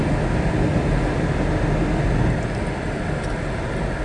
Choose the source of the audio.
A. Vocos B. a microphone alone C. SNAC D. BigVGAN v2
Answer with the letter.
B